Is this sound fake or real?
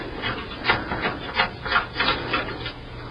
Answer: real